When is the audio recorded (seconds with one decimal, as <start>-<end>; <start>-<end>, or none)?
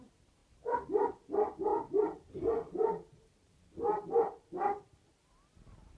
none